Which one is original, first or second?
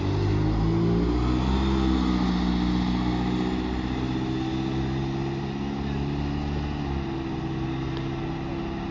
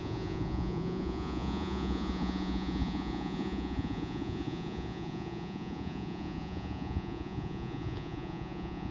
first